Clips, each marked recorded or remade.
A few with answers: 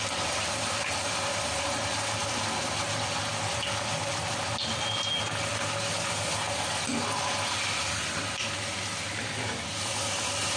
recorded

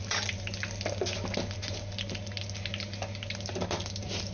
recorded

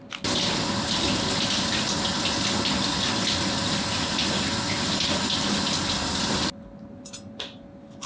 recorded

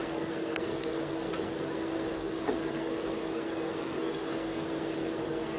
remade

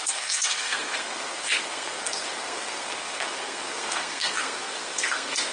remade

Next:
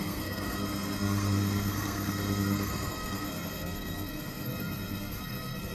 remade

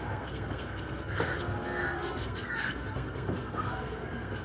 remade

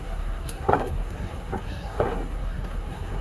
remade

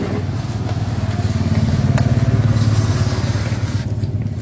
recorded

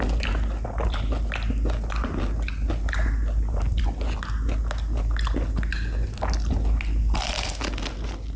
recorded